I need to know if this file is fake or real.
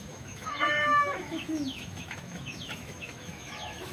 fake